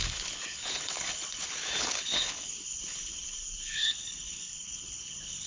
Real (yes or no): no